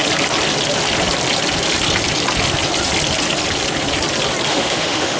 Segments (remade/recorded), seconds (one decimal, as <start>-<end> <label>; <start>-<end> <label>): 0.0-4.5 recorded; 4.5-5.2 remade

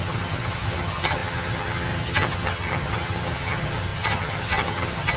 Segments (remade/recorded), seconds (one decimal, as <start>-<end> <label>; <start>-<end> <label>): 0.0-5.2 remade

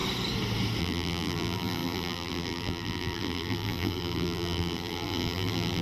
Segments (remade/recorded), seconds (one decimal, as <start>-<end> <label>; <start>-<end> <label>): 0.0-0.8 recorded; 0.8-5.8 remade